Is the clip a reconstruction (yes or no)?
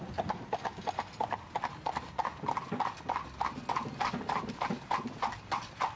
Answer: no